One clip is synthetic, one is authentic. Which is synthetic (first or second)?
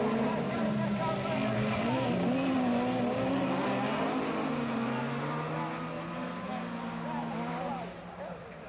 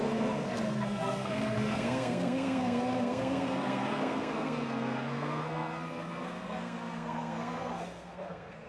second